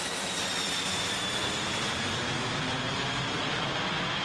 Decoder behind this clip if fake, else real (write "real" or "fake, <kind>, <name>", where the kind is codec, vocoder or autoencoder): real